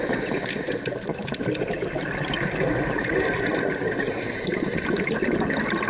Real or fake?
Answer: real